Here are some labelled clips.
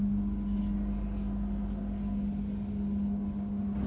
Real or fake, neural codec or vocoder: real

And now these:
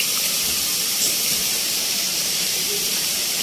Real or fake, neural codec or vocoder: fake, vocoder, BigVGAN v2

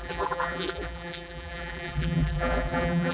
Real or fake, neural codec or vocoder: fake, vocoder, BigVGAN v2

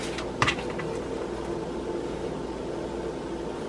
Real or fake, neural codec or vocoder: real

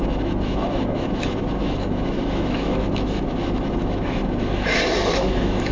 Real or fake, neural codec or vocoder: fake, autoencoder, DAC-VAE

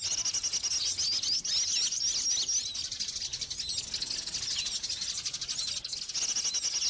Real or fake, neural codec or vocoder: real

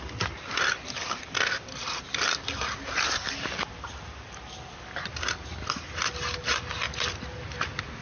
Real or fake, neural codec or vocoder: real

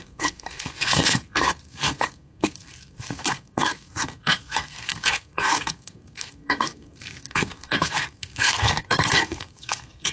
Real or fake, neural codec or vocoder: fake, codec, SNAC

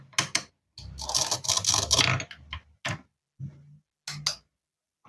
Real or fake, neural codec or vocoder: real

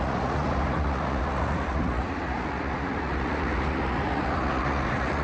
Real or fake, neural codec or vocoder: fake, vocoder, Vocos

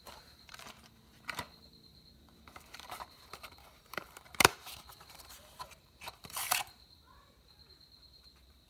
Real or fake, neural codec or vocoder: fake, vocoder, BigVGAN v2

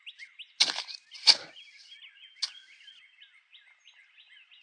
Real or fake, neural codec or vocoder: real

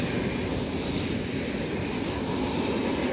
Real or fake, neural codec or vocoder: real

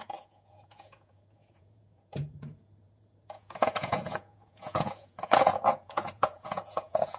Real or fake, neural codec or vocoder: fake, vocoder, Vocos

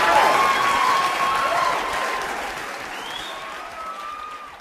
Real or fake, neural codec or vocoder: real